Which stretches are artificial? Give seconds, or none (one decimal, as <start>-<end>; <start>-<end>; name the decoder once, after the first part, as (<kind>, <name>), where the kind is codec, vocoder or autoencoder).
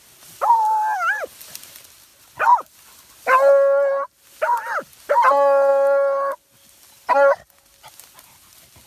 none